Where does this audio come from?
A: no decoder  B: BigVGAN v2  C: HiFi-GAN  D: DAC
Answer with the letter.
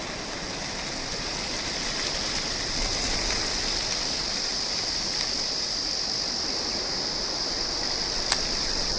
A